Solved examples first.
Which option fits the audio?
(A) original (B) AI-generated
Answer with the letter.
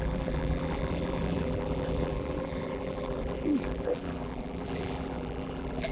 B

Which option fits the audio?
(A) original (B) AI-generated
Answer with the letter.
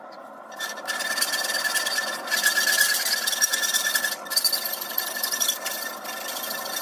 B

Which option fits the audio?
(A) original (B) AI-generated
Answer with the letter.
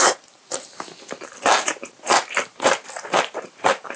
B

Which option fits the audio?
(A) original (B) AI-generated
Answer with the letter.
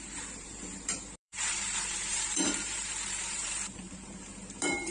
B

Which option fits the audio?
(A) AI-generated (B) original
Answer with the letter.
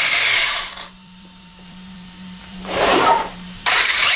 A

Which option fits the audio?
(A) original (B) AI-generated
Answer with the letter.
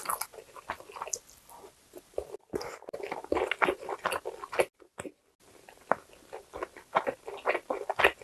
A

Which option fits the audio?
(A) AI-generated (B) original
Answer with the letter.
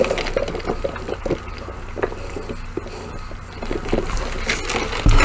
B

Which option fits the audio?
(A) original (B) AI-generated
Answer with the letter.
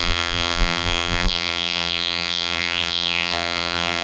B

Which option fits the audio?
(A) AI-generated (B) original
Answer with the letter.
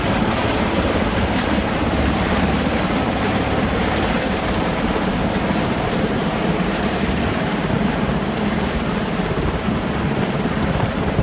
A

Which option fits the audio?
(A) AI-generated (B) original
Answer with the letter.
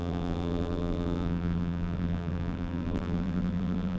A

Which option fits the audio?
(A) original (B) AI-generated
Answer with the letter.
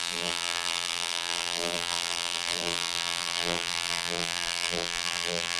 B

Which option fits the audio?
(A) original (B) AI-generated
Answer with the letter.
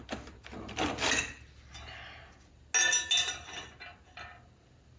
A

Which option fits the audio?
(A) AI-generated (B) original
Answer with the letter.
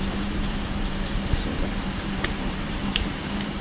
A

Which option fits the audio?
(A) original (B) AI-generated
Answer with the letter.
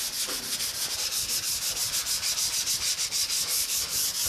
A